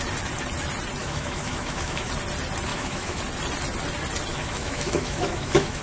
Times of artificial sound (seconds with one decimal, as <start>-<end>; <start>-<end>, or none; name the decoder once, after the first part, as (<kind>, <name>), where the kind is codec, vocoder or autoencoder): 1.0-2.1 (autoencoder, DAC-VAE); 2.7-3.2; 4.3-5.8